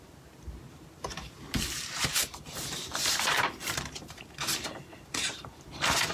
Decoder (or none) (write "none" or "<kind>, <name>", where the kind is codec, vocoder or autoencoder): vocoder, BigVGAN v2